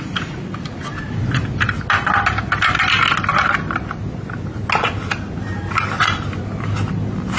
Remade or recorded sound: recorded